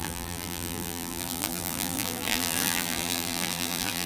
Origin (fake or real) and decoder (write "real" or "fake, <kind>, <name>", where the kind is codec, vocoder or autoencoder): fake, vocoder, BigVGAN v2